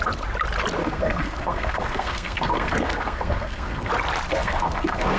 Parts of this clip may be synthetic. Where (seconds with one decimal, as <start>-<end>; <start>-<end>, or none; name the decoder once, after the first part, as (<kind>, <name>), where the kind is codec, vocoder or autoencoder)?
0.8-3.9 (codec, SNAC); 4.3-5.2